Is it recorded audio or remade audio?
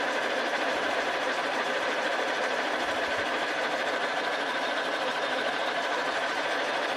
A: remade